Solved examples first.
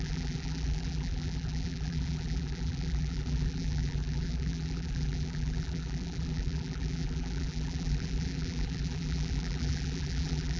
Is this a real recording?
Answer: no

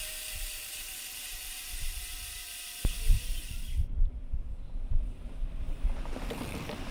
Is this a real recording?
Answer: no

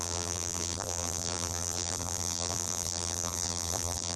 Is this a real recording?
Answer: no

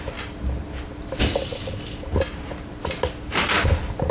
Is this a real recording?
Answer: yes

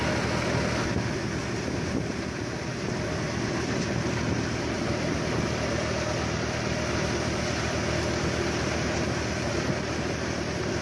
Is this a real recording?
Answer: yes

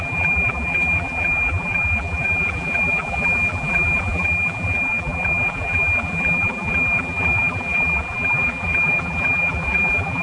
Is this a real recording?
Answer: no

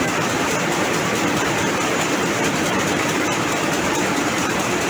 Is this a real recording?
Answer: no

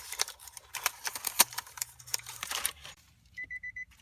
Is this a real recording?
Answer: no